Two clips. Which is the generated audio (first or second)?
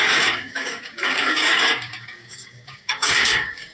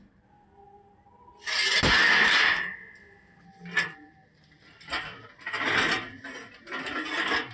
first